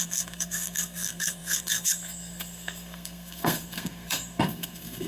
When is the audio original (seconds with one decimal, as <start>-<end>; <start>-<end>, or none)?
none